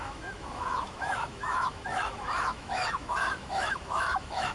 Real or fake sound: fake